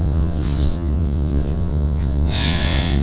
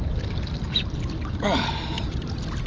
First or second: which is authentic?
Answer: second